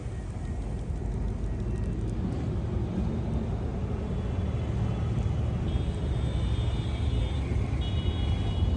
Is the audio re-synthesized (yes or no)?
no